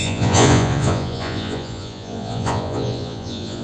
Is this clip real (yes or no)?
no